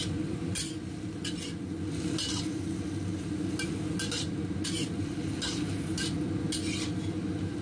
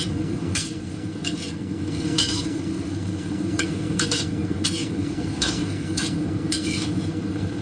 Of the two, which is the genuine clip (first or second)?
first